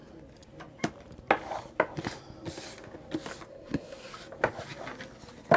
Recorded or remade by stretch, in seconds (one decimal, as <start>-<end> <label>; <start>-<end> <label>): 0.0-3.5 recorded; 3.5-4.1 remade; 4.1-5.6 recorded